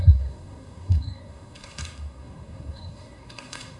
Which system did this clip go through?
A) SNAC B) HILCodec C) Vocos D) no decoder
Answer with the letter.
A